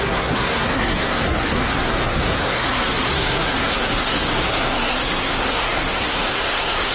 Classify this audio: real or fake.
fake